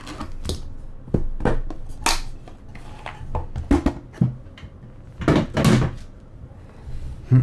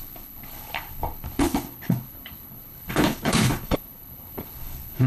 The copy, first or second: second